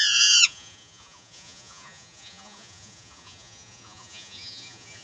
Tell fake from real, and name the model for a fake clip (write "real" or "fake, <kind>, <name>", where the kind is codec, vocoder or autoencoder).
fake, vocoder, Vocos